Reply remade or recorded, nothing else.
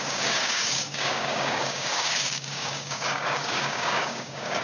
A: remade